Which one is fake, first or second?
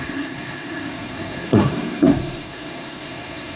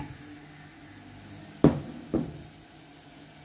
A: first